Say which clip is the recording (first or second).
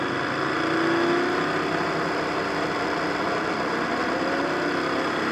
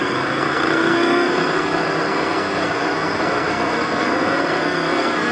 first